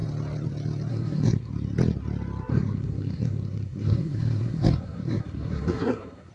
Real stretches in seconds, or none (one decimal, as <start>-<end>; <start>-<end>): 0.0-0.9; 1.5-2.5